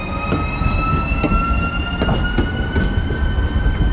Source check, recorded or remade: recorded